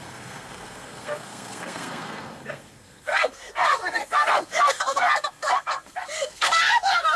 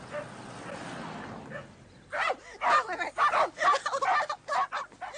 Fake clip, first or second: first